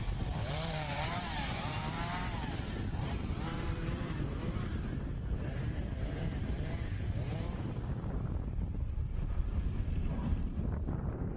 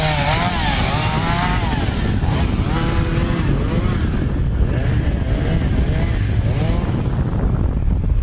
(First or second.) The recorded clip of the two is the second